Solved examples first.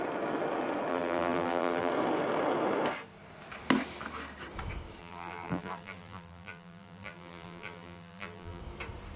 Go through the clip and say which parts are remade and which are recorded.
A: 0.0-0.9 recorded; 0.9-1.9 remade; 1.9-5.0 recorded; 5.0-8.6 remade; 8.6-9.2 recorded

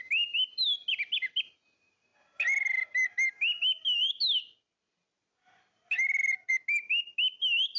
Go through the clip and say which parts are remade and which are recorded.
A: 0.0-7.8 recorded

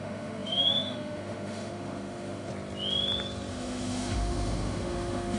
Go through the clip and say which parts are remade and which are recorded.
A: 0.0-2.5 remade; 2.5-3.5 recorded; 3.5-5.4 remade

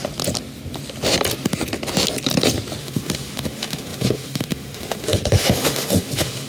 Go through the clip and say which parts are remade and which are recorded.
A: 0.0-2.8 recorded; 2.8-6.5 remade

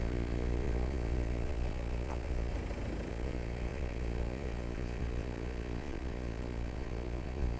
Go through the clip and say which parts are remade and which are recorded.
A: 0.0-2.5 remade; 2.5-3.1 recorded; 3.1-7.6 remade

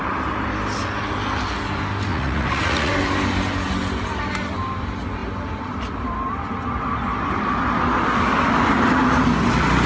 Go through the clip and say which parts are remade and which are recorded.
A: 0.0-2.1 recorded; 2.1-2.9 remade; 2.9-9.9 recorded

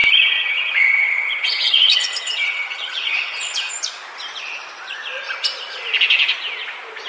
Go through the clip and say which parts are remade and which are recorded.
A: 0.0-3.7 remade; 3.7-7.1 recorded